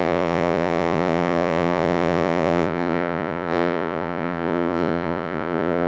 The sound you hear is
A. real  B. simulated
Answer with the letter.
B